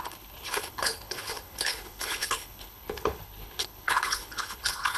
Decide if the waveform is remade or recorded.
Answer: remade